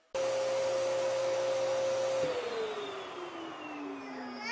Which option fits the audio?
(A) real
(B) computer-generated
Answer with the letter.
A